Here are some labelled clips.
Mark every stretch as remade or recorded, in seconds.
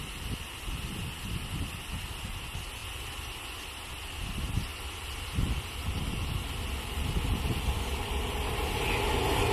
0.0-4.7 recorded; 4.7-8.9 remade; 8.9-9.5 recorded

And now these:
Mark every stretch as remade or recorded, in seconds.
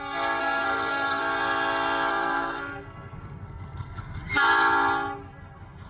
0.0-0.4 recorded; 0.4-1.2 remade; 1.2-2.1 recorded; 2.1-4.2 remade; 4.2-5.9 recorded